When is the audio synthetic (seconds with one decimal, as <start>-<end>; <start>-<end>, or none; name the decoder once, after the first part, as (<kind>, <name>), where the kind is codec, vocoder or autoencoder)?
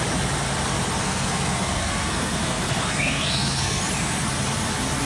1.0-3.8 (codec, SNAC)